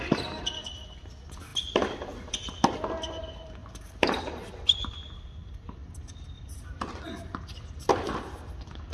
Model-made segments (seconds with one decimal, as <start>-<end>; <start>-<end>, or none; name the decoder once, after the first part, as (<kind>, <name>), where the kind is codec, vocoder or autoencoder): 1.5-2.5 (vocoder, BigVGAN v2); 3.6-4.2